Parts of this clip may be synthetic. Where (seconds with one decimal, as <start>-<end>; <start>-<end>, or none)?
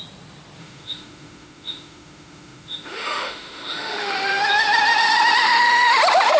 0.6-4.4; 5.4-6.0